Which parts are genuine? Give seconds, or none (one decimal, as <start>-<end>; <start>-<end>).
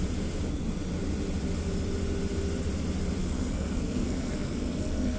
0.0-3.2